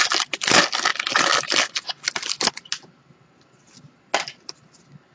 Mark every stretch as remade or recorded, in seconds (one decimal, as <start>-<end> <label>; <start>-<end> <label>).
0.0-5.1 recorded